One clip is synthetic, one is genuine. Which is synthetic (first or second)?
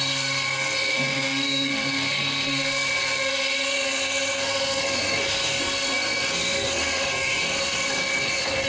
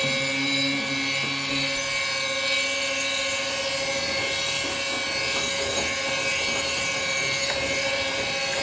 first